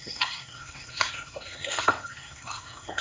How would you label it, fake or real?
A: fake